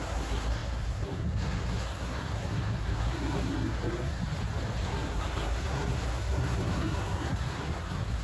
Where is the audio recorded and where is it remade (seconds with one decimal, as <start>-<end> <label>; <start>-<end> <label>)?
0.0-4.2 remade; 4.2-4.8 recorded; 4.8-8.2 remade